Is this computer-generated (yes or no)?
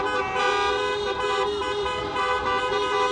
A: no